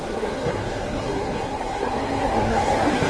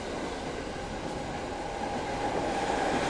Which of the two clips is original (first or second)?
second